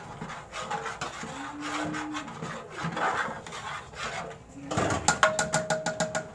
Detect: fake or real real